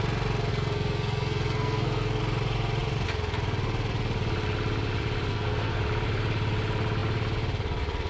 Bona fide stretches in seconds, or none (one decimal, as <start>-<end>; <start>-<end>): 0.0-0.5; 2.2-5.3; 5.8-8.1